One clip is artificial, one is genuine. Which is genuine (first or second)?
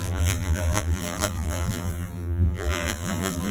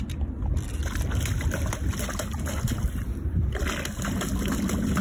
second